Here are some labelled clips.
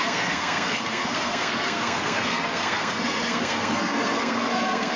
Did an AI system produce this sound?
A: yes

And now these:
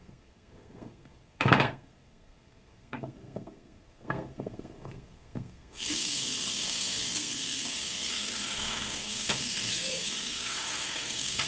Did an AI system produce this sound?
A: yes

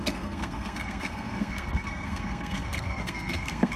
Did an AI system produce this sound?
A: yes